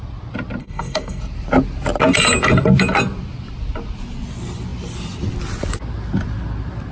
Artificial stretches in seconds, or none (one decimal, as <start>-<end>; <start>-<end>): 0.6-1.2